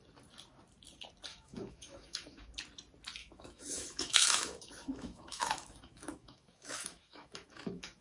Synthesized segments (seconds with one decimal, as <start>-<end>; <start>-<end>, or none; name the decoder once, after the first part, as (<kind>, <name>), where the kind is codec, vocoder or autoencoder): 1.3-2.5 (autoencoder, DAC-VAE); 3.2-8.0